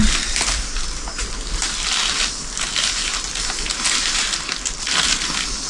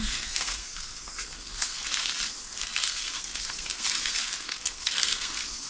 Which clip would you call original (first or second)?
first